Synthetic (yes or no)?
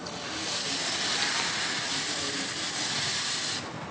no